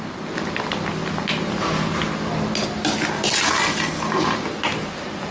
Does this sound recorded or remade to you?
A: recorded